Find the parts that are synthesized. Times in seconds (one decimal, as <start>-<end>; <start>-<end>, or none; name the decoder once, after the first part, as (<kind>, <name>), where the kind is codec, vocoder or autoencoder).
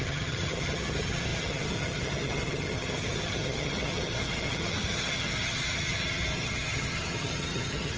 0.0-8.0 (vocoder, HiFi-GAN)